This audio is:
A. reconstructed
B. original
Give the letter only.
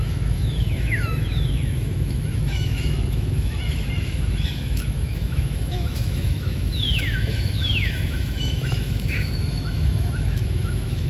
A